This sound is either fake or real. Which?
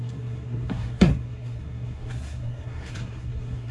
fake